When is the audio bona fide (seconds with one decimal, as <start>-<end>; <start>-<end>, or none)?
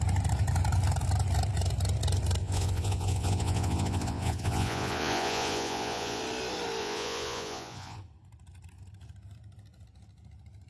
0.0-2.4; 6.2-6.8; 8.0-10.7